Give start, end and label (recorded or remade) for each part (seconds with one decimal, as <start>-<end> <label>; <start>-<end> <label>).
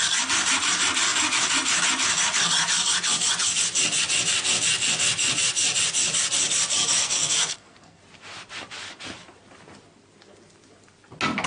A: 0.0-7.0 recorded; 7.0-8.0 remade; 8.0-11.5 recorded